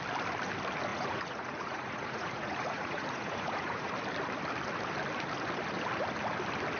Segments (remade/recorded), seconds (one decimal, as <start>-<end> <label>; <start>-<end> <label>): 0.0-0.9 recorded; 0.9-3.9 remade; 3.9-6.8 recorded